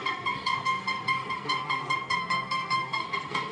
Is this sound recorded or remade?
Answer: remade